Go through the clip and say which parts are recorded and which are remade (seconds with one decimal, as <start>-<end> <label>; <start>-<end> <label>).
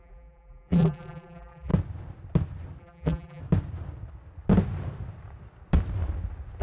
0.0-1.7 remade; 1.7-2.8 recorded; 2.8-3.4 remade; 3.4-6.6 recorded